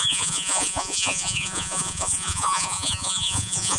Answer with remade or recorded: remade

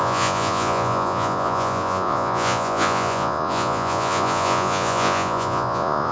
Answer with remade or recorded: remade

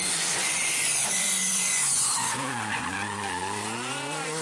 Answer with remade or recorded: remade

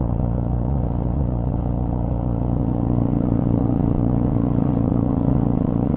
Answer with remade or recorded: remade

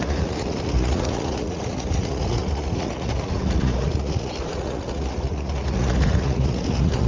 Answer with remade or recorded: remade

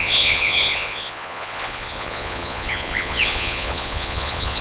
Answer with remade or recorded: remade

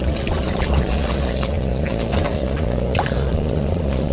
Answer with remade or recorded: remade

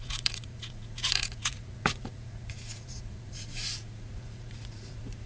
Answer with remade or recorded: remade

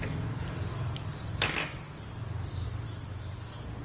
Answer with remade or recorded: recorded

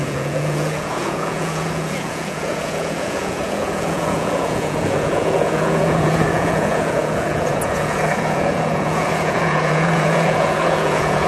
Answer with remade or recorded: remade